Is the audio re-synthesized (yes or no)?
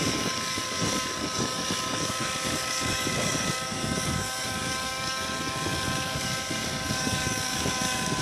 yes